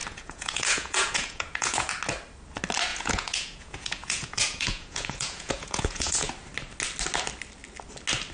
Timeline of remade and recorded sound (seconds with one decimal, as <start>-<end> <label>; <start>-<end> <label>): 0.0-1.9 remade; 1.9-2.9 recorded; 2.9-6.3 remade; 6.3-8.3 recorded